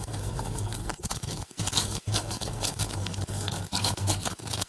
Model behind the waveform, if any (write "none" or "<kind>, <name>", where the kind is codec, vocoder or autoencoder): codec, SNAC